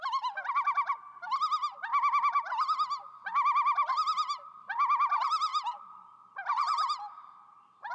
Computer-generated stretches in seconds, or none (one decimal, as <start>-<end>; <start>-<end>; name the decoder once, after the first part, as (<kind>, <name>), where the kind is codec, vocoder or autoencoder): none